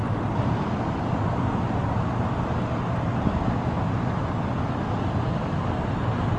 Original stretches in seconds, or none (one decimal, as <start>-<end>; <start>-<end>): 0.0-6.4